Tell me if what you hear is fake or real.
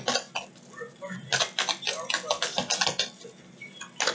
real